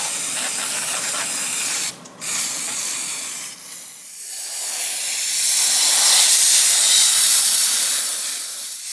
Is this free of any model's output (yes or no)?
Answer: no